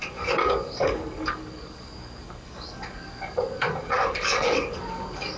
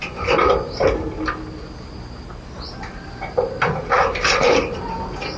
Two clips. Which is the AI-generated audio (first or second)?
first